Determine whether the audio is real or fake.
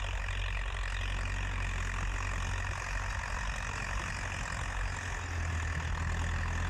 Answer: real